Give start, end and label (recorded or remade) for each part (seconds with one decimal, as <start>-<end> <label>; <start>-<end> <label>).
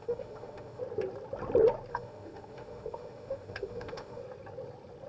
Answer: 0.0-0.8 remade; 0.8-1.9 recorded; 1.9-4.2 remade; 4.2-5.1 recorded